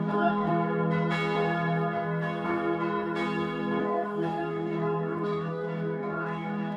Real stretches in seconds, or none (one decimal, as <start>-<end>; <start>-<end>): 0.5-3.8